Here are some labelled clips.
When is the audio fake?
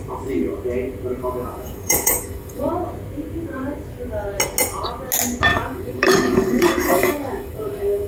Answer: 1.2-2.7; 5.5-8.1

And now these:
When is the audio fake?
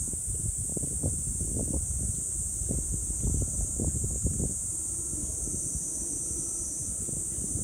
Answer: none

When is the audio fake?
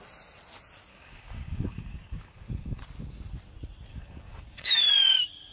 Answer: 0.9-2.8; 3.9-4.9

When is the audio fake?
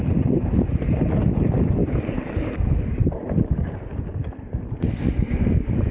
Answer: none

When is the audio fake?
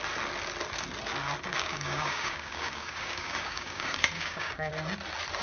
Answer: 1.5-4.7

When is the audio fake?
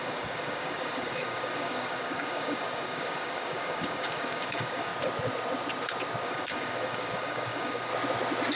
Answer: 0.0-4.9; 6.2-7.9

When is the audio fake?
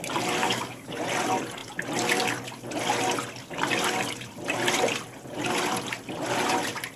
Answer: 0.4-1.0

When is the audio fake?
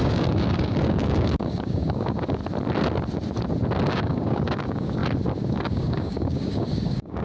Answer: 0.0-2.4; 3.9-5.0; 5.5-7.2